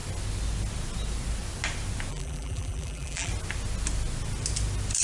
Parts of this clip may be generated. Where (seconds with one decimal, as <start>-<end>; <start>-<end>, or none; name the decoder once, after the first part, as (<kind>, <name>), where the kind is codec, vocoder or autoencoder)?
2.1-3.3 (vocoder, BigVGAN v2)